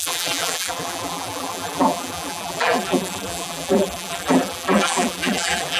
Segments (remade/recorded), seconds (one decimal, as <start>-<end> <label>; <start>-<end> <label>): 0.0-5.8 remade